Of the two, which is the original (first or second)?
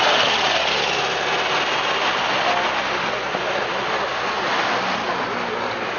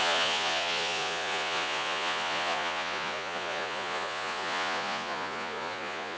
first